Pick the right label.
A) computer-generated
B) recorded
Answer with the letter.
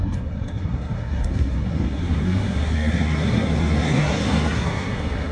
A